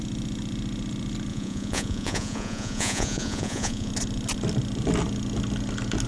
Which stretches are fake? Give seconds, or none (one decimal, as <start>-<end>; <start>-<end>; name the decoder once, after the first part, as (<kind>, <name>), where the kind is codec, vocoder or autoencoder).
1.3-3.9 (vocoder, Vocos)